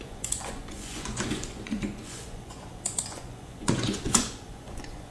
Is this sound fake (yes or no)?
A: yes